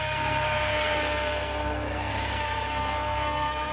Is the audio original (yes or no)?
no